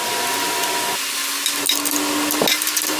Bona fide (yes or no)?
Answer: yes